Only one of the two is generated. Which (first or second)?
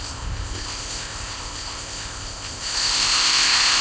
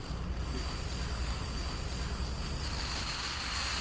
first